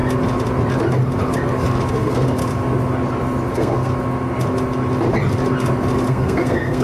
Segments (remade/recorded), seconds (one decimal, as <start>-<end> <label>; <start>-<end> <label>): 0.0-1.9 recorded; 1.9-2.4 remade; 2.4-3.5 recorded; 3.5-3.9 remade; 3.9-6.1 recorded; 6.1-6.8 remade